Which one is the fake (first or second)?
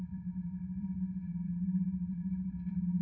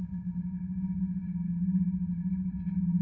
first